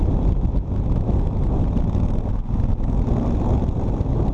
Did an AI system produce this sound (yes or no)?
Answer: no